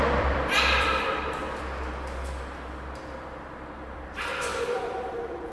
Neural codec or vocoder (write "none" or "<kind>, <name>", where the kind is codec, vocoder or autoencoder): vocoder, BigVGAN v2